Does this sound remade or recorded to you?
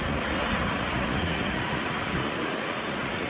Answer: remade